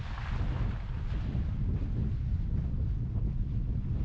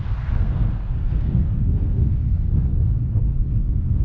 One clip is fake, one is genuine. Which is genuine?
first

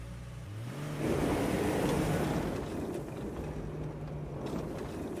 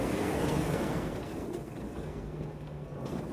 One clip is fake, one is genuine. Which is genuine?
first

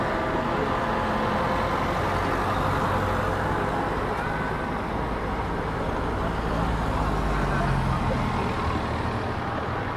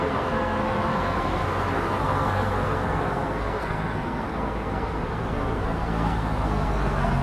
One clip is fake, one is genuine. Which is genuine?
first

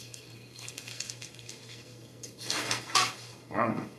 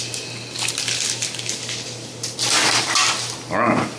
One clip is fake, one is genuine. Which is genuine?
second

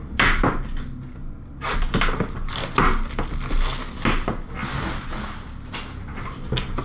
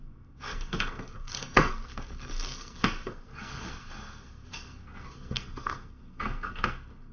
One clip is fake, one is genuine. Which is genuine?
first